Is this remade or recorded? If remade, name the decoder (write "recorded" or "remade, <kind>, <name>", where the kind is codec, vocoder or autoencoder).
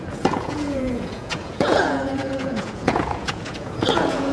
remade, vocoder, Vocos